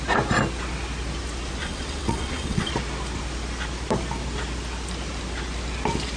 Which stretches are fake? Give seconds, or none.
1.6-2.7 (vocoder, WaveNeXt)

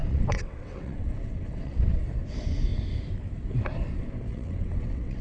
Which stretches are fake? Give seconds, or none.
0.0-2.0 (vocoder, WaveNeXt); 4.3-5.2

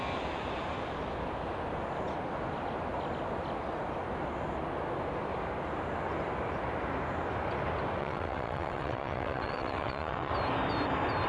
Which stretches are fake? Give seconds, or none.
8.0-10.3 (vocoder, WaveNeXt)

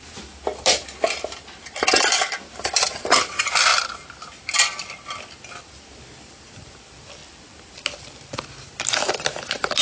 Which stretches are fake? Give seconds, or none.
none

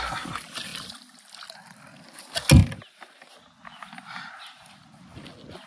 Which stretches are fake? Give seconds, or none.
none

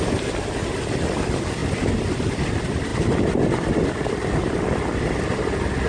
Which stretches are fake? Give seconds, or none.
none